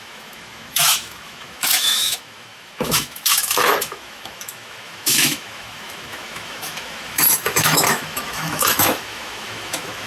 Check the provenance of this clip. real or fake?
fake